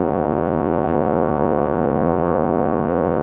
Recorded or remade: remade